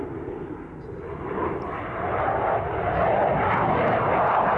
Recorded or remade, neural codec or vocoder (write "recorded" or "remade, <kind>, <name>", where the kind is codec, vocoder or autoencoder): recorded